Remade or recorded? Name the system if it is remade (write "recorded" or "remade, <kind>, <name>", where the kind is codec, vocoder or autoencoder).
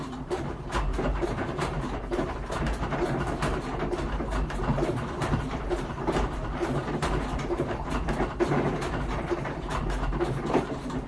remade, vocoder, BigVGAN v2